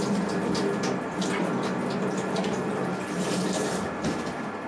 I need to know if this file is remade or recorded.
recorded